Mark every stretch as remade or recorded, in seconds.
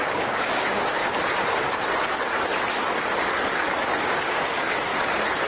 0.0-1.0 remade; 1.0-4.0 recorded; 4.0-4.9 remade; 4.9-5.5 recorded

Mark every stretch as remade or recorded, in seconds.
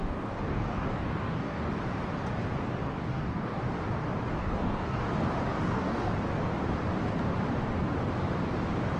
0.0-1.7 remade; 1.7-3.0 recorded; 3.0-3.6 remade; 3.6-4.4 recorded; 4.4-5.0 remade; 5.0-5.5 recorded; 5.5-6.1 remade; 6.1-9.0 recorded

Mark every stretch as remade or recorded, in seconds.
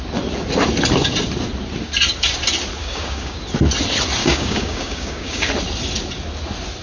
0.0-2.8 recorded; 2.8-3.4 remade; 3.4-4.2 recorded; 4.2-5.5 remade; 5.5-6.8 recorded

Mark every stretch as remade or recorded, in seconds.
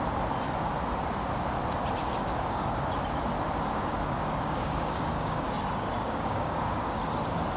0.0-2.0 recorded; 2.0-2.9 remade; 2.9-3.7 recorded; 3.7-7.0 remade; 7.0-7.6 recorded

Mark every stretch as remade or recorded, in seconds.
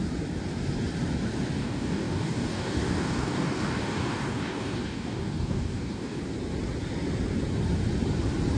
0.0-1.6 recorded; 1.6-6.2 remade; 6.2-8.6 recorded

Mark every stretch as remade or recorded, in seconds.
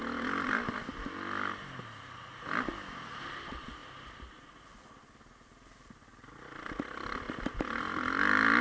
0.0-8.6 recorded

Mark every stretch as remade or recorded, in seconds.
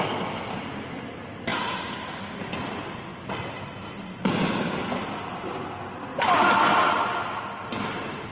0.0-8.3 recorded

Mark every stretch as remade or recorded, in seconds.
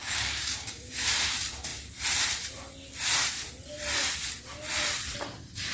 0.0-0.9 remade; 0.9-5.7 recorded